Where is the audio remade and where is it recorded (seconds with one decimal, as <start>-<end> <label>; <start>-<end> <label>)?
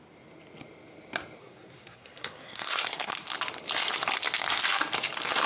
0.0-1.4 recorded; 1.4-3.1 remade; 3.1-5.5 recorded